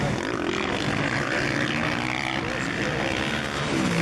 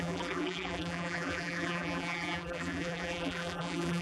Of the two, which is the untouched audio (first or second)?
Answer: first